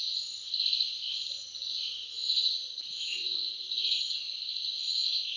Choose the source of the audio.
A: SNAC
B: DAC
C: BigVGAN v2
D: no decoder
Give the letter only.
D